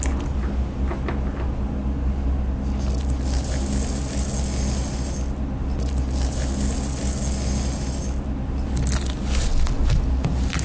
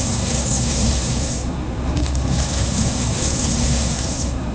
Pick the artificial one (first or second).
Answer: second